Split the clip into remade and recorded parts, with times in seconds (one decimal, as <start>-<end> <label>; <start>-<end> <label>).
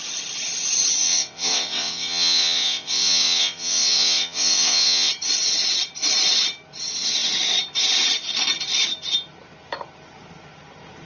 0.0-1.0 recorded; 1.0-5.1 remade; 5.1-11.1 recorded